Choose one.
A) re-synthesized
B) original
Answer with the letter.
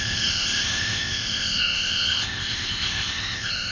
A